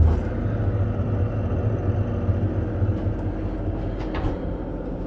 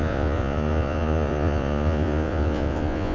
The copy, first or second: second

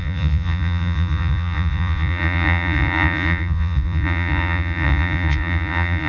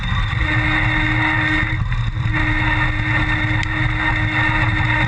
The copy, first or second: first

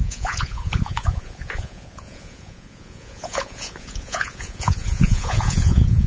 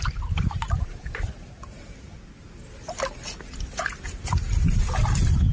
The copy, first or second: first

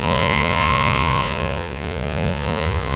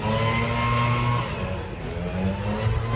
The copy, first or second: first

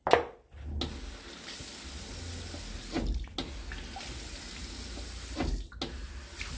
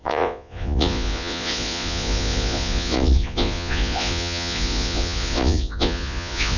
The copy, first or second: second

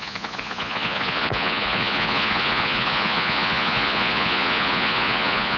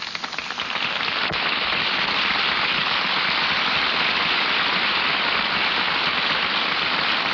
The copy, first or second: first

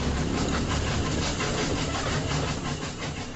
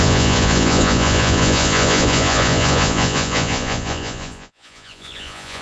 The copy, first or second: second